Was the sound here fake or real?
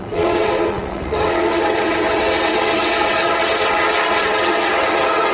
fake